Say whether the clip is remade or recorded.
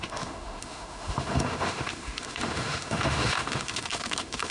remade